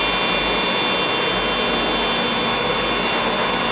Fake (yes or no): no